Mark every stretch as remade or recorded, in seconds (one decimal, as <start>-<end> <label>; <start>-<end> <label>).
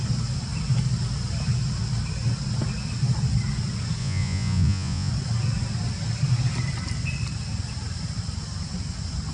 0.0-4.0 recorded; 4.0-5.1 remade; 5.1-9.3 recorded